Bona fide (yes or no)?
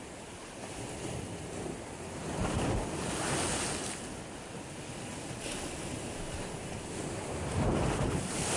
yes